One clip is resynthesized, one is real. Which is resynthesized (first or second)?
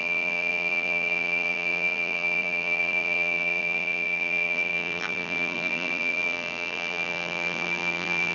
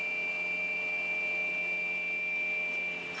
first